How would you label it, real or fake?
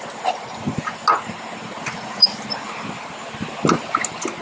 real